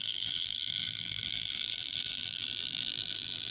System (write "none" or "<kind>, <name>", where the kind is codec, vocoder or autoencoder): vocoder, BigVGAN v2